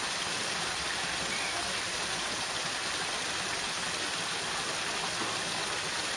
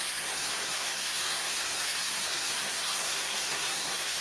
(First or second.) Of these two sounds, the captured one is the first